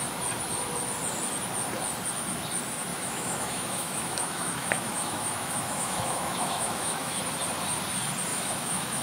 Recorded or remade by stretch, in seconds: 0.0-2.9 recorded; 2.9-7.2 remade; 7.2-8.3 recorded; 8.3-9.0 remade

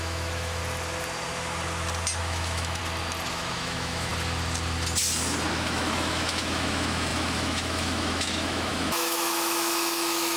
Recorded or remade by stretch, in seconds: 0.0-0.6 remade; 0.6-2.2 recorded; 2.2-2.8 remade; 2.8-3.3 recorded; 3.3-4.1 remade; 4.1-5.5 recorded; 5.5-10.4 remade

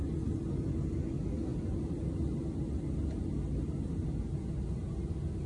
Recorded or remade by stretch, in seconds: 0.0-5.5 recorded

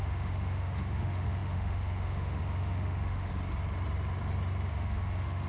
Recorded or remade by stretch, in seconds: 0.0-3.3 remade; 3.3-4.7 recorded; 4.7-5.5 remade

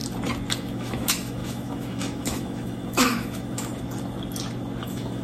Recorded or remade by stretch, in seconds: 0.0-0.6 recorded; 0.6-3.7 remade; 3.7-4.8 recorded; 4.8-5.2 remade

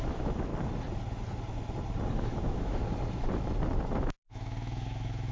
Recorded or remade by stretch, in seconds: 0.0-0.5 remade; 0.5-2.2 recorded; 2.2-2.8 remade; 2.8-4.0 recorded; 4.0-5.3 remade

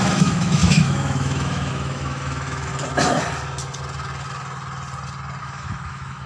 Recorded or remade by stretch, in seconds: 0.0-2.7 remade; 2.7-5.4 recorded; 5.4-6.3 remade

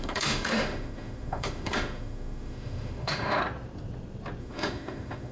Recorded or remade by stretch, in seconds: 0.0-3.4 remade; 3.4-4.4 recorded; 4.4-5.3 remade